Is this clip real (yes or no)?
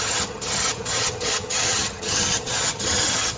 no